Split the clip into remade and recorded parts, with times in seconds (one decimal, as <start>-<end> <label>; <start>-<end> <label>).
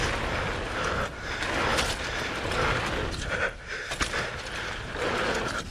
0.0-5.7 recorded